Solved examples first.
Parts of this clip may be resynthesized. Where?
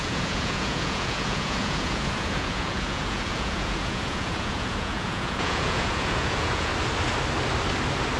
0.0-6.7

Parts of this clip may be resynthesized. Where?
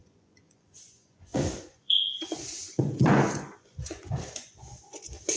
0.0-5.4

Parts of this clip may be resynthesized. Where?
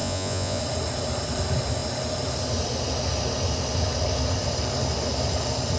0.0-0.6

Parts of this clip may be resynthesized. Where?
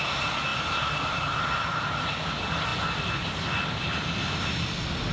none